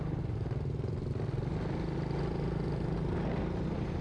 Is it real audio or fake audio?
real